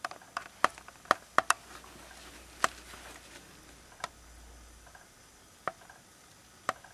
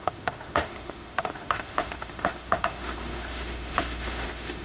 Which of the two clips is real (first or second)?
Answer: first